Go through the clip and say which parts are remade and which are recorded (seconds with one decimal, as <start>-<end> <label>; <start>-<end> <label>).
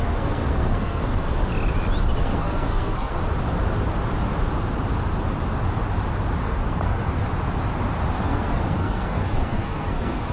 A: 0.0-1.4 remade; 1.4-2.2 recorded; 2.2-3.2 remade; 3.2-6.4 recorded; 6.4-7.2 remade; 7.2-8.2 recorded; 8.2-10.3 remade